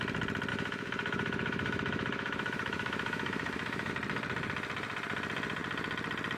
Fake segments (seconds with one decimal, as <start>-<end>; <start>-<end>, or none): 0.5-3.9